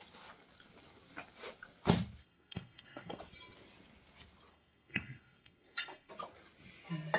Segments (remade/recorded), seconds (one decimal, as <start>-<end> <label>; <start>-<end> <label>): 0.0-2.2 recorded; 2.2-3.2 remade; 3.2-4.5 recorded; 4.5-6.1 remade; 6.1-7.2 recorded